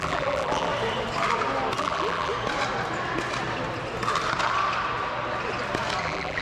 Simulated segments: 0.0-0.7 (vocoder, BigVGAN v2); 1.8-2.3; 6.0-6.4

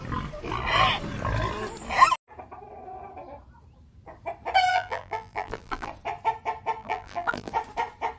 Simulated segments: 4.7-5.9 (vocoder, BigVGAN v2); 6.8-7.5

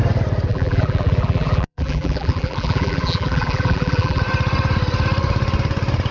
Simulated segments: 0.5-4.2 (vocoder, BigVGAN v2)